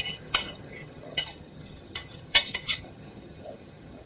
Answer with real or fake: fake